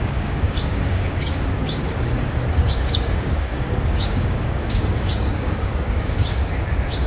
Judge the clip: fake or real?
fake